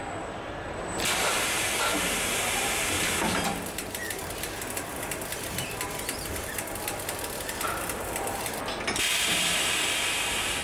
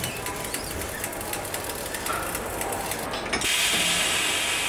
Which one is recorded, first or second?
second